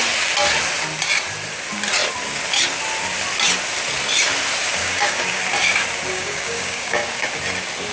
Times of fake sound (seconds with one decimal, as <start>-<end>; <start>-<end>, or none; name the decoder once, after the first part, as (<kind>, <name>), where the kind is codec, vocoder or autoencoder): 4.8-5.4 (codec, DAC); 6.1-7.3